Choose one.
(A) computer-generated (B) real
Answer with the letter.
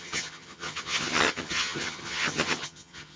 A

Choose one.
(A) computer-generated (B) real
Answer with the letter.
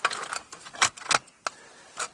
B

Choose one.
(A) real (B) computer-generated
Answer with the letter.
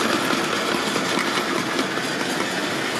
A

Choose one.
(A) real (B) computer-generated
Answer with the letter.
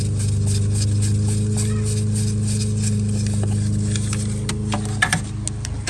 A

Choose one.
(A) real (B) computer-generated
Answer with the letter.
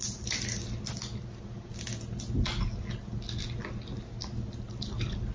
A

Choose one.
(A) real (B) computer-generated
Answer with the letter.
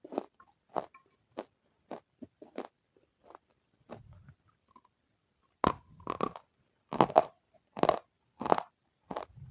A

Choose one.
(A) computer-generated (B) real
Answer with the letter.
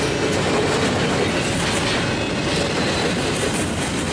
B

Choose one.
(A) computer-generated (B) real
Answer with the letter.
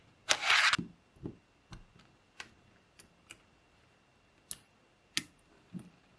B